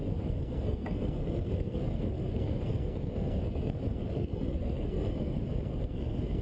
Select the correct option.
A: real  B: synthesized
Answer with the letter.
B